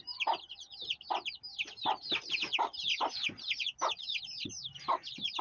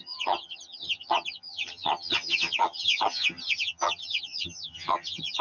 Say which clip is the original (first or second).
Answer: first